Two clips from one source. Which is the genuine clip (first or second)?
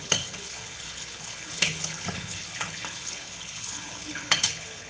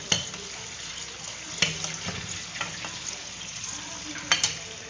second